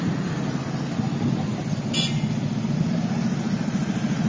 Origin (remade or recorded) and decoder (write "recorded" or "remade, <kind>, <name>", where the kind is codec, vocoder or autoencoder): recorded